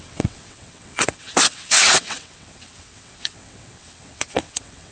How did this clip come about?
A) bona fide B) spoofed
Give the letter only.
B